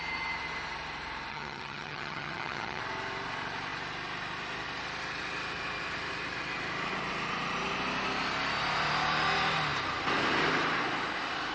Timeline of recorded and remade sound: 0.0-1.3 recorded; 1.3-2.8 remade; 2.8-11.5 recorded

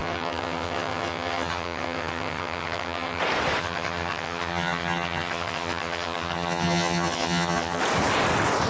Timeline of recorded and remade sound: 0.0-3.2 remade; 3.2-3.6 recorded; 3.6-7.8 remade; 7.8-8.7 recorded